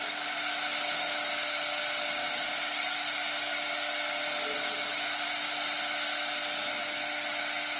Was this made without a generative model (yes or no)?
yes